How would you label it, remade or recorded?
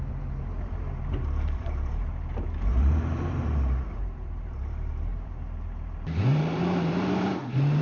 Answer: remade